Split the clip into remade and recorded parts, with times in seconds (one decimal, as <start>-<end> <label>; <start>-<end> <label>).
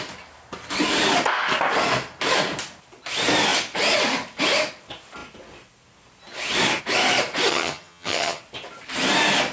0.0-7.5 recorded; 7.5-8.4 remade; 8.4-9.5 recorded